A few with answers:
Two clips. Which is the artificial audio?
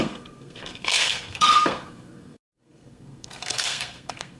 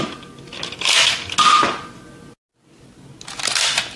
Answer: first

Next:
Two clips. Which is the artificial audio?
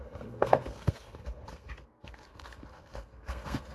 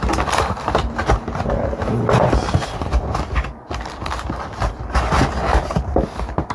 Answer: first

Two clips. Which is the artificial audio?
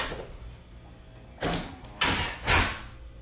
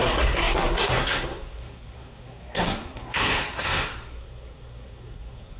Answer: second